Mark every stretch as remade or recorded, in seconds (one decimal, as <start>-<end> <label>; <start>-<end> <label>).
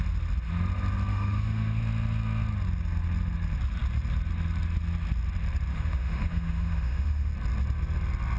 0.0-1.1 recorded; 1.1-1.8 remade; 1.8-5.7 recorded; 5.7-7.3 remade; 7.3-8.4 recorded